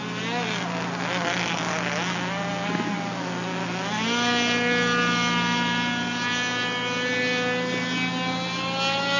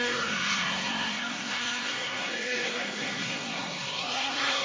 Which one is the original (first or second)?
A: first